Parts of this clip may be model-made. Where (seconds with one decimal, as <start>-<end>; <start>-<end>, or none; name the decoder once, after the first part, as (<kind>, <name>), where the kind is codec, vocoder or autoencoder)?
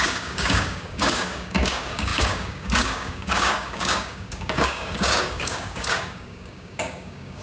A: 0.0-7.4 (codec, DAC)